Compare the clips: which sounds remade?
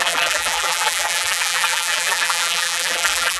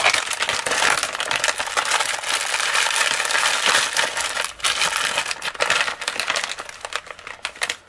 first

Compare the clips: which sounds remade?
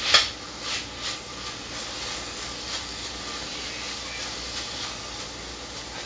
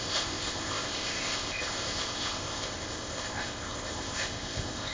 second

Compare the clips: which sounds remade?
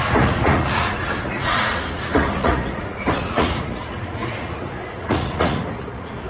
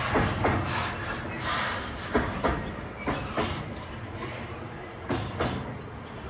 first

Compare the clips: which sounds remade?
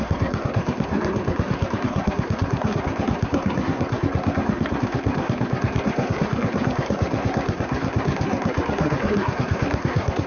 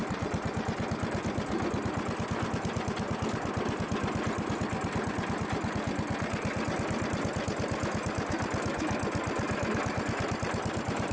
first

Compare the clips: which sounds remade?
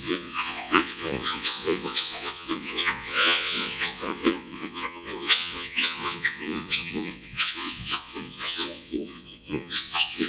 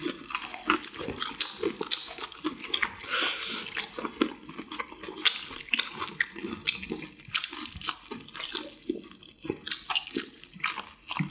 first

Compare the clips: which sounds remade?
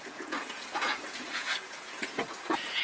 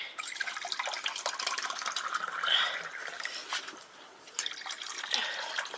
first